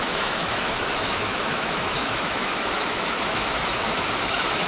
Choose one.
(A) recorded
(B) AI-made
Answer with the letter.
B